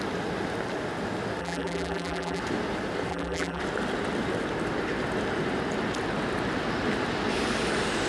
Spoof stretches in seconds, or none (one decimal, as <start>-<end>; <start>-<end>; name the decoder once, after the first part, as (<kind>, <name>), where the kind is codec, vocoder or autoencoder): 1.4-2.4 (vocoder, BigVGAN v2); 3.1-3.6

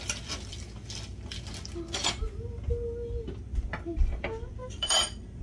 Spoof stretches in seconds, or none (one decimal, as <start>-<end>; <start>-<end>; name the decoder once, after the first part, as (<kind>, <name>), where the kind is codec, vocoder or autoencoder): 4.6-5.4 (vocoder, BigVGAN v2)

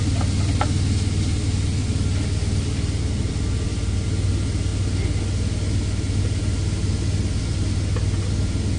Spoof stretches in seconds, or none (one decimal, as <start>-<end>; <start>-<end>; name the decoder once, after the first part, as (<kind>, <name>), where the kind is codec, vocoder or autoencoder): none

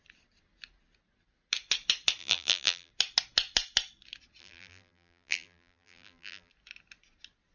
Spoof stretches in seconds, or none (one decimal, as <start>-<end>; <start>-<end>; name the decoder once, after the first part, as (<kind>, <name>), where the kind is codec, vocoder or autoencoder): 2.2-2.9 (vocoder, BigVGAN v2); 4.4-6.5

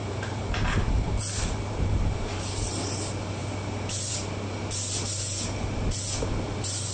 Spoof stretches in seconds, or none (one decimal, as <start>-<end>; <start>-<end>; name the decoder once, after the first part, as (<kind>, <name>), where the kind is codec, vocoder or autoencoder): 0.0-2.7 (vocoder, BigVGAN v2)

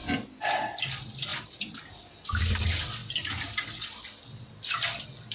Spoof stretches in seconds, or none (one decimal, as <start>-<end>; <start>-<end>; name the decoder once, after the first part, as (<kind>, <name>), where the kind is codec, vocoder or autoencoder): 1.3-2.1 (vocoder, BigVGAN v2)

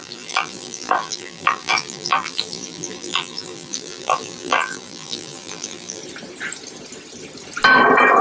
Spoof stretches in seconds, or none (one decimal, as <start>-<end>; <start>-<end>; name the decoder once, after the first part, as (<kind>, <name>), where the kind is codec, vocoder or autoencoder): 0.0-6.0 (vocoder, BigVGAN v2)